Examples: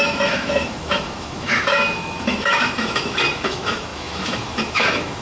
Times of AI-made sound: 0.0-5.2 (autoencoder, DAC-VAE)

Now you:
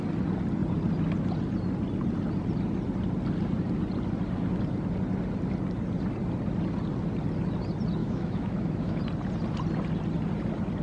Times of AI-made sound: 8.0-9.0 (autoencoder, DAC-VAE)

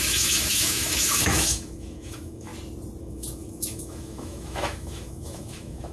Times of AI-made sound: 0.0-2.5 (autoencoder, DAC-VAE); 3.0-5.9

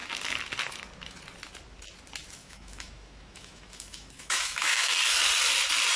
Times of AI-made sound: 2.4-4.9 (autoencoder, DAC-VAE)

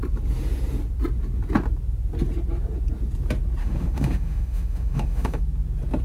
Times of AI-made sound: 3.6-5.4 (autoencoder, DAC-VAE)

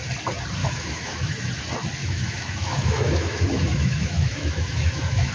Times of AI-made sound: 0.6-1.5 (autoencoder, DAC-VAE); 2.0-5.3